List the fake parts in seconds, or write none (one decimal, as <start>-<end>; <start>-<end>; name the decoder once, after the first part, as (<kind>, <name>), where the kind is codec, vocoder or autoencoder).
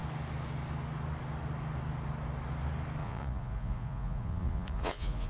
3.0-5.3 (vocoder, Vocos)